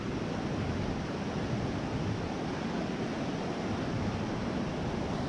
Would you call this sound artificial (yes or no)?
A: no